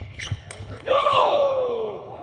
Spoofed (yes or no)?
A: yes